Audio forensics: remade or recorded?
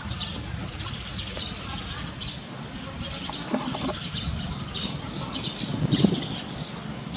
recorded